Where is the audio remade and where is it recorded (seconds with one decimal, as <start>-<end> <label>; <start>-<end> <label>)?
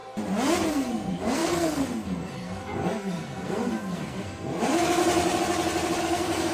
0.0-0.7 recorded; 0.7-5.0 remade; 5.0-6.0 recorded; 6.0-6.5 remade